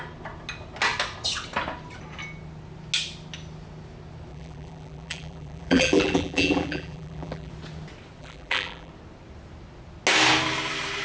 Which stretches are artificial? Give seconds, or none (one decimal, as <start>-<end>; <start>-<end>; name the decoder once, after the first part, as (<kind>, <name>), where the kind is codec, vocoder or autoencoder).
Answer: 4.3-7.5 (vocoder, BigVGAN v2); 8.2-8.9